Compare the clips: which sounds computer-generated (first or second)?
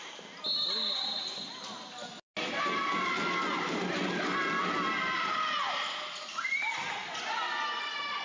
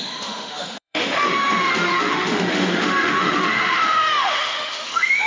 second